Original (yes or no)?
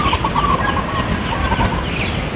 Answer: yes